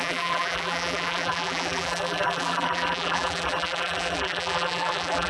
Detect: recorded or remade remade